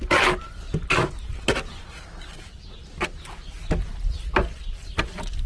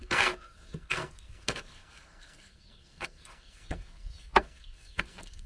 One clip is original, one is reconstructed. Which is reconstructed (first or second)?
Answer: second